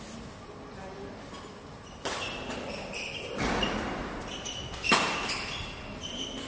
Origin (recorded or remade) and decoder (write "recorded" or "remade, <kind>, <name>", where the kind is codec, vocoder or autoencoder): recorded